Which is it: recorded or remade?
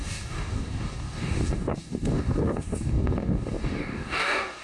remade